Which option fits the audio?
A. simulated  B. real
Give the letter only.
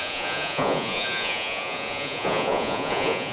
A